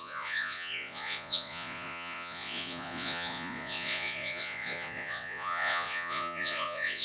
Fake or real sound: fake